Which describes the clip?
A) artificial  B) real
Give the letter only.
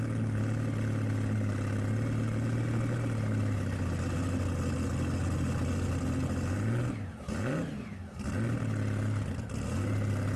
B